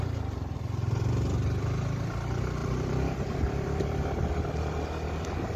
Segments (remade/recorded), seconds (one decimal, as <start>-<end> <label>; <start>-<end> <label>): 0.0-2.6 recorded; 2.6-4.3 remade; 4.3-5.6 recorded